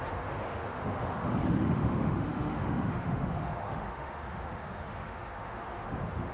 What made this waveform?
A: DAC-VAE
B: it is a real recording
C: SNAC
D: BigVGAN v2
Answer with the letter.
A